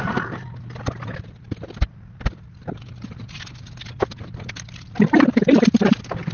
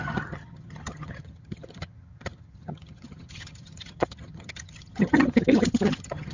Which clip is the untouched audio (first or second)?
first